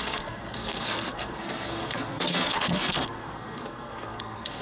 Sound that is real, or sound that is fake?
fake